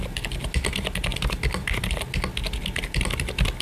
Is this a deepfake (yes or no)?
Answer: no